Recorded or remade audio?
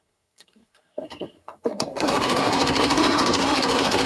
remade